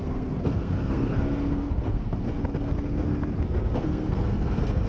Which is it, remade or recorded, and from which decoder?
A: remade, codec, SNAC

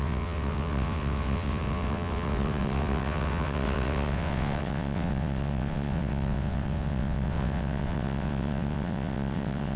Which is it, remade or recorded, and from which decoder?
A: remade, vocoder, WaveNeXt